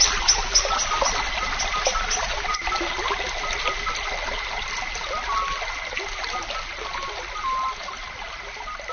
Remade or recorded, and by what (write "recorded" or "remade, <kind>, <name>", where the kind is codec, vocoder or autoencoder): recorded